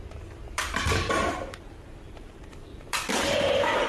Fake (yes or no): yes